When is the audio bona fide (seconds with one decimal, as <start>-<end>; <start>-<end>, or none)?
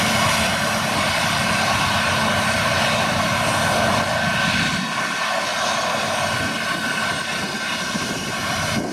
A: 0.0-8.9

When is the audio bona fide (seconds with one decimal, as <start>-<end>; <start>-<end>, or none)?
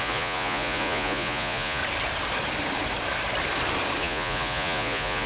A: 1.8-4.0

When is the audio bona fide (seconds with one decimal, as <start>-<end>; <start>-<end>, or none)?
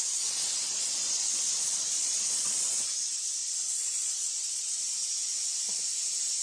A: 0.0-0.7; 2.8-3.4; 4.8-6.4